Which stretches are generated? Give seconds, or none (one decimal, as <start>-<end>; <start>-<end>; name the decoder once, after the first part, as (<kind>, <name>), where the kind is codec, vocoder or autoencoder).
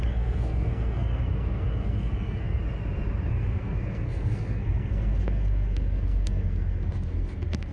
0.0-2.6 (codec, SNAC); 3.3-7.7